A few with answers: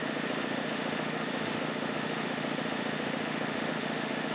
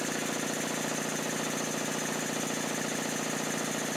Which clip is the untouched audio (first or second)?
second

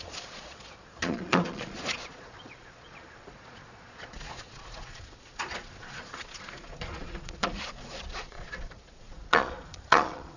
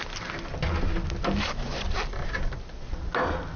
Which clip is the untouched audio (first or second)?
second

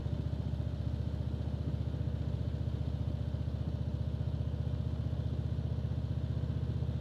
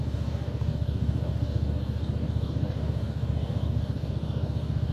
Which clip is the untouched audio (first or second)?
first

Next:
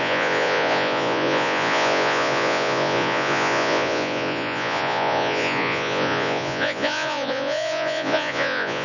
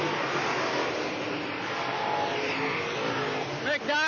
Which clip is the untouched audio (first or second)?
second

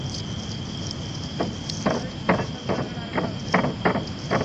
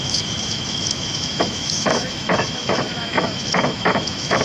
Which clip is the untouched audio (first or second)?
first